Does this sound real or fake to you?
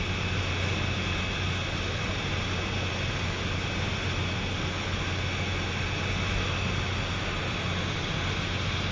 real